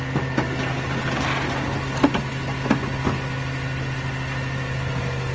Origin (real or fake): real